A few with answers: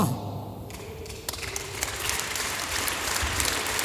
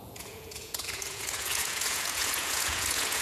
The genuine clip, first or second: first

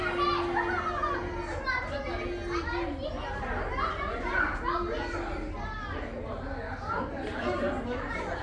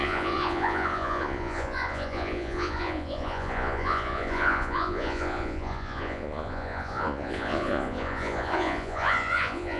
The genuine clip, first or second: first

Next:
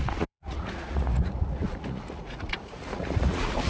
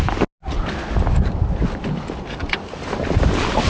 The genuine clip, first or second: second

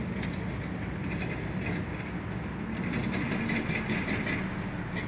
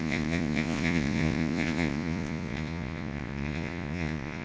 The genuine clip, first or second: first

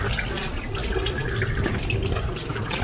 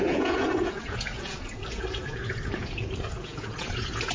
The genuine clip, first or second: first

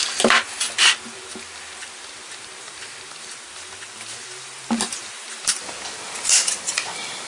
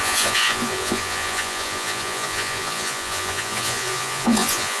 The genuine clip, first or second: first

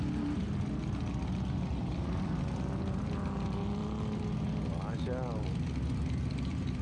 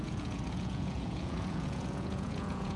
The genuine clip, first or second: first